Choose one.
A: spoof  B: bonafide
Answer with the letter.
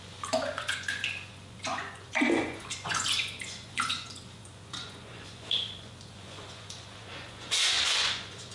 A